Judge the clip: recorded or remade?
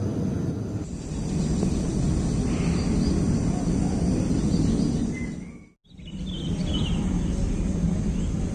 recorded